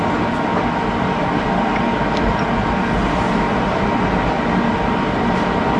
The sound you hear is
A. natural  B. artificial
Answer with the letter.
A